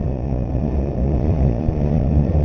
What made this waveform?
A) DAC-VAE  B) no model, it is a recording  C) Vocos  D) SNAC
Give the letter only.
C